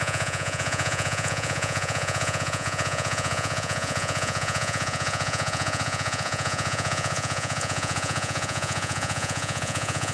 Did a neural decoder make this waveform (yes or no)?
yes